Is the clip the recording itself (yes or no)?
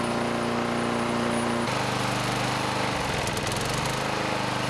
yes